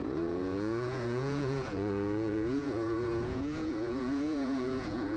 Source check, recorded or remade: remade